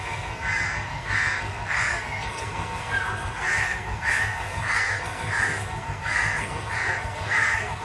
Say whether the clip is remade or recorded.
remade